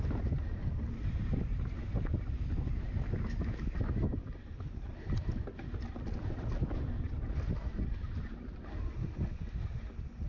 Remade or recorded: recorded